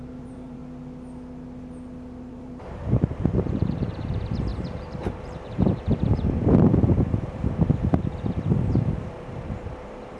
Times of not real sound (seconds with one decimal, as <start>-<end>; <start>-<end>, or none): 0.0-0.6; 2.2-10.2